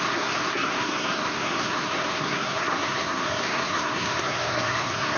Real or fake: fake